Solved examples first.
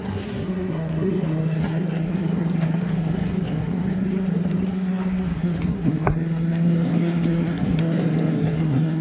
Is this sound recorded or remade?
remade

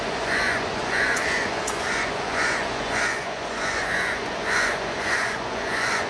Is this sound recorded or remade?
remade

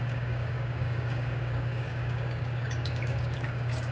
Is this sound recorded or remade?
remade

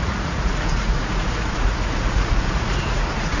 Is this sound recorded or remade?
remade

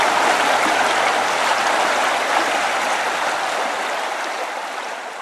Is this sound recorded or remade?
recorded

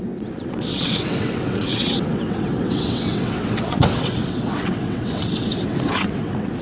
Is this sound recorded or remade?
remade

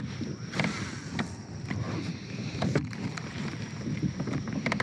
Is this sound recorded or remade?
recorded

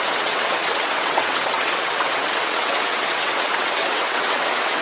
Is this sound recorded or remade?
remade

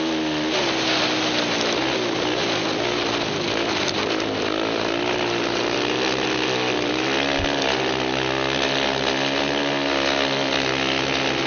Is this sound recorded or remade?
recorded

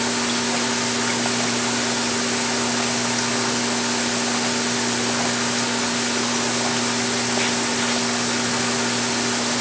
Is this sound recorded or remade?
recorded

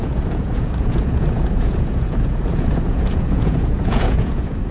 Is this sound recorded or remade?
remade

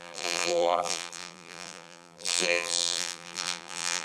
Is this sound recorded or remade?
remade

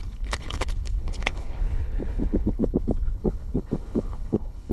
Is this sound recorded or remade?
remade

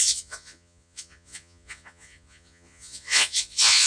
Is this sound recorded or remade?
remade